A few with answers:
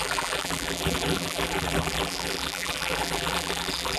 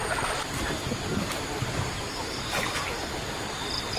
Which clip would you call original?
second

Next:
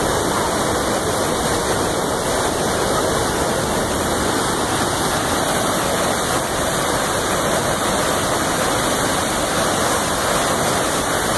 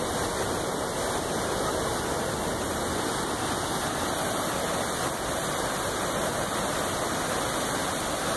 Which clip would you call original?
second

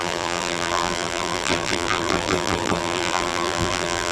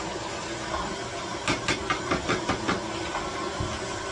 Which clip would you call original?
second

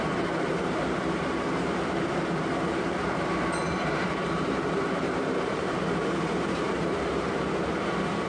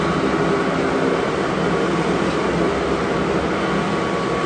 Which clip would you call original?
second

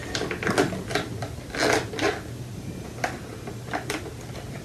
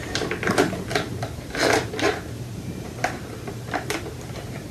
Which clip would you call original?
first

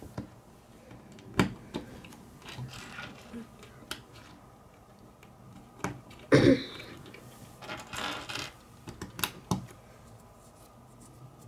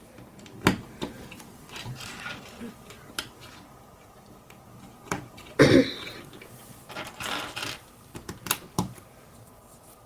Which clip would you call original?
first